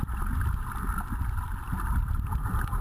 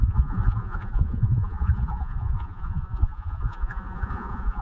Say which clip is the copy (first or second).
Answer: second